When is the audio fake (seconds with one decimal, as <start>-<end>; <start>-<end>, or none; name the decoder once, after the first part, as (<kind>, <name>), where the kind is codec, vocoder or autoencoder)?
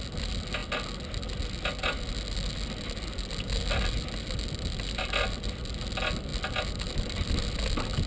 none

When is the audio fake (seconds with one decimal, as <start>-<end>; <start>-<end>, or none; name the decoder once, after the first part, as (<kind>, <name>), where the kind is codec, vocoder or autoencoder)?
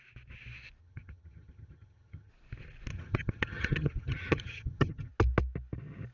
0.8-2.3 (vocoder, HiFi-GAN); 2.9-5.1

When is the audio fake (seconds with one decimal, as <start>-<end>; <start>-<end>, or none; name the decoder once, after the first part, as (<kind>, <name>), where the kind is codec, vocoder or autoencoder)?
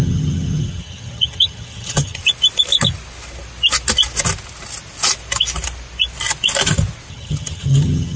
0.0-2.2 (vocoder, HiFi-GAN); 7.1-8.2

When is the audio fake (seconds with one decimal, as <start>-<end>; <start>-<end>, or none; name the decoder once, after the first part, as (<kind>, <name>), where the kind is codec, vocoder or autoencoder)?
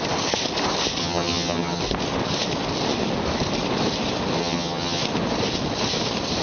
1.0-1.8 (vocoder, HiFi-GAN); 4.4-5.0